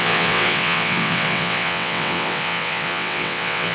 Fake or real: fake